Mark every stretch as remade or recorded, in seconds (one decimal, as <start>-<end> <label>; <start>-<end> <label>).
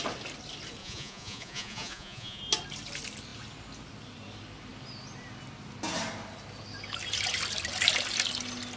0.0-0.8 recorded; 0.8-2.4 remade; 2.4-8.8 recorded